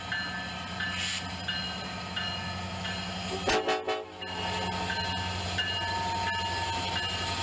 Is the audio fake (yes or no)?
no